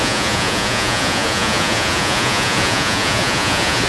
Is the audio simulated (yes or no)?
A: yes